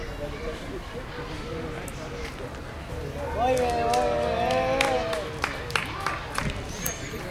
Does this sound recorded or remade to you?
recorded